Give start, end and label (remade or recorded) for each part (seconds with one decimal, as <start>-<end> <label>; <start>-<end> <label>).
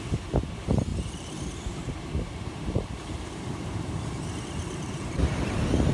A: 0.0-5.2 remade; 5.2-5.9 recorded